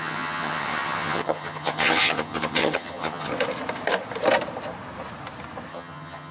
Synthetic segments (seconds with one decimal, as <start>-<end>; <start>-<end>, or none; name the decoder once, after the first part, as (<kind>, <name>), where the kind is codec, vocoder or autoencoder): 0.0-3.3 (vocoder, HiFi-GAN); 5.7-6.3

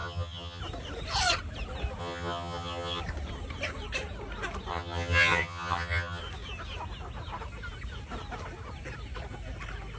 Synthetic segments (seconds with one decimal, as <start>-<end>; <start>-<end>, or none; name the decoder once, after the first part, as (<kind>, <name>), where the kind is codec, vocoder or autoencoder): 0.0-0.6 (vocoder, HiFi-GAN); 2.0-3.0; 4.7-6.2

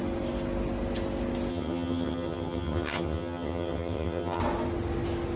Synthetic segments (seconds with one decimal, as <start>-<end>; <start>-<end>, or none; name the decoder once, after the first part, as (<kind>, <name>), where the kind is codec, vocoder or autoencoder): 1.5-4.4 (vocoder, HiFi-GAN)

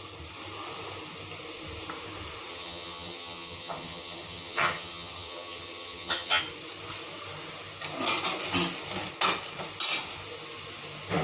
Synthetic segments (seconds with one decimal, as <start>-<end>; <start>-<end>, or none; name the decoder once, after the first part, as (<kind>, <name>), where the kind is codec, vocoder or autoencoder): 2.5-6.4 (vocoder, HiFi-GAN)

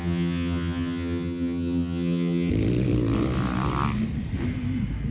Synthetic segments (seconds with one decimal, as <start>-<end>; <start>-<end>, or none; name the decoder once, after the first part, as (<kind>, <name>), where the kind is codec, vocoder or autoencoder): 0.0-2.5 (vocoder, HiFi-GAN)